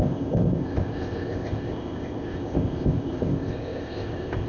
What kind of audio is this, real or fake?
fake